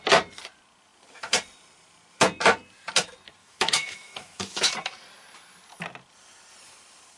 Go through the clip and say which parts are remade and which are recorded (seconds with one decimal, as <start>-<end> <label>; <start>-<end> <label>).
0.0-3.4 recorded; 3.4-4.7 remade; 4.7-7.2 recorded

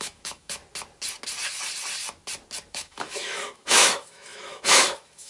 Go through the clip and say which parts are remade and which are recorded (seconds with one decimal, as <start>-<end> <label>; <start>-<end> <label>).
0.0-0.6 remade; 0.6-2.7 recorded; 2.7-5.3 remade

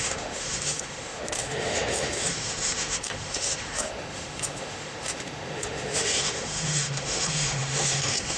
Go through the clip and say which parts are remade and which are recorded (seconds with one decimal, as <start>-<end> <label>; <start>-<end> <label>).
0.0-8.4 remade

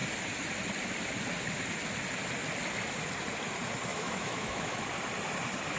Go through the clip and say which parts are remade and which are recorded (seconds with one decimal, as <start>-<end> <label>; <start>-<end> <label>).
0.0-3.9 recorded; 3.9-4.8 remade; 4.8-5.8 recorded